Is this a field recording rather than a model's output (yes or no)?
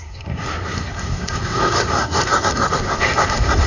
no